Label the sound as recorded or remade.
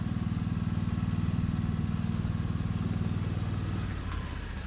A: recorded